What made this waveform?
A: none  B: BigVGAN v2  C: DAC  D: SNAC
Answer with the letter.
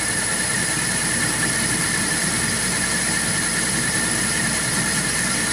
B